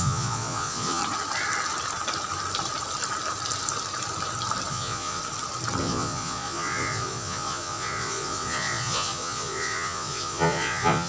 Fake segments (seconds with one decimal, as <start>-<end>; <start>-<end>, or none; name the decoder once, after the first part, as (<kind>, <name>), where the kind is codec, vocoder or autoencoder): 0.0-1.0 (vocoder, Vocos); 4.7-5.2; 5.8-11.1